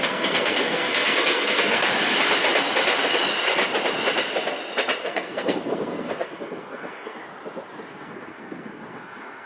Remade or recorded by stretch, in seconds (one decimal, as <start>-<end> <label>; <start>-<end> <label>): 0.0-1.9 remade; 1.9-5.0 recorded; 5.0-7.2 remade; 7.2-7.9 recorded; 7.9-9.5 remade